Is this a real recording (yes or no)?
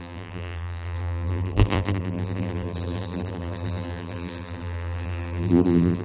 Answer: no